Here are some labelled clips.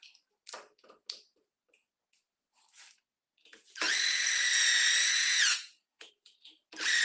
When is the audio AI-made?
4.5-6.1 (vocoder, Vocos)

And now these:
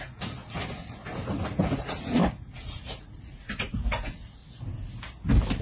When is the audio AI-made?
0.0-1.0 (vocoder, Vocos); 1.6-4.4

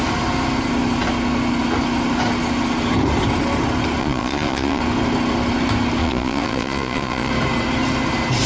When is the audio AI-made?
4.0-4.8 (vocoder, Vocos); 6.0-7.3

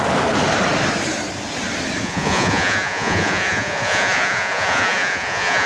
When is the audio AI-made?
2.0-5.7 (vocoder, Vocos)

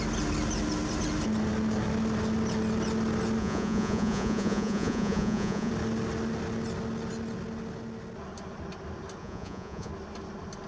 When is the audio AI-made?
3.4-5.7 (vocoder, Vocos); 9.2-9.9